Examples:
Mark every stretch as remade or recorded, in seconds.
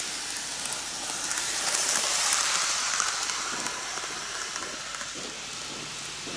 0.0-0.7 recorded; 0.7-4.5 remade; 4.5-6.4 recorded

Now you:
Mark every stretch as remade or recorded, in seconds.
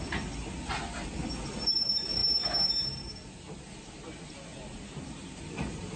0.0-6.0 recorded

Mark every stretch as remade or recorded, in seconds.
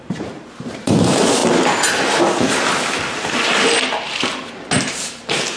0.0-1.4 remade; 1.4-4.8 recorded; 4.8-5.6 remade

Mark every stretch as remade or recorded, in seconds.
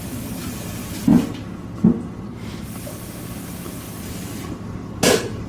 0.0-5.5 recorded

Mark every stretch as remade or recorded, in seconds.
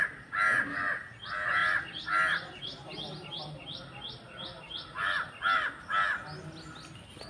0.0-7.3 recorded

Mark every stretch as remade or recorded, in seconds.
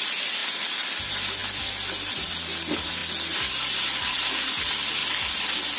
0.0-0.4 recorded; 0.4-1.0 remade; 1.0-5.8 recorded